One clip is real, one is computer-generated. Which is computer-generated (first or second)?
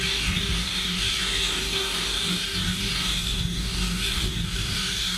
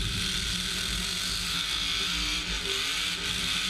first